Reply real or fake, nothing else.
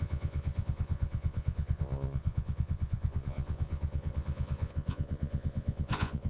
fake